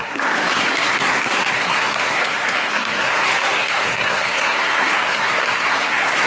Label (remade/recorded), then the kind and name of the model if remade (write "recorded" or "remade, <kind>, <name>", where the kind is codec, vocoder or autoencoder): remade, codec, SNAC